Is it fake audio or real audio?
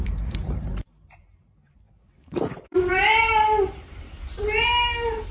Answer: fake